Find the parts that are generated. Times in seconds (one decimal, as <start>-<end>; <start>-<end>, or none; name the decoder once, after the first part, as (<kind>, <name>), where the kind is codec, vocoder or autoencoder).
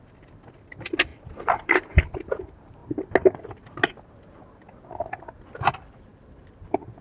none